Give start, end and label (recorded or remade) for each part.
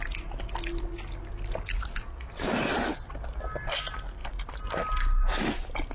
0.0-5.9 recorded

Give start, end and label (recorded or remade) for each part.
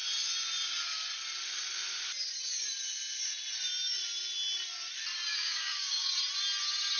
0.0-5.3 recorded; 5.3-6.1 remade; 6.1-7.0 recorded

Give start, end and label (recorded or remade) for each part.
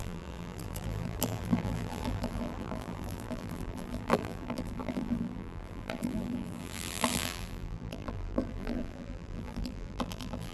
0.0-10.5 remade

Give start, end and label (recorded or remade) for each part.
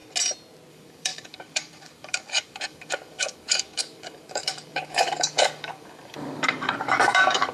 0.0-0.7 recorded; 0.7-7.5 remade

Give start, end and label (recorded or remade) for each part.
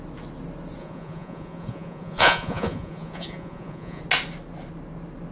0.0-0.8 recorded; 0.8-4.0 remade; 4.0-5.3 recorded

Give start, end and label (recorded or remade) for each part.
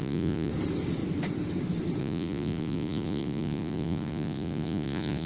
0.0-0.5 remade; 0.5-2.0 recorded; 2.0-5.3 remade